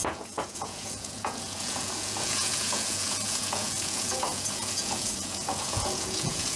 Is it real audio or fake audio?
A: fake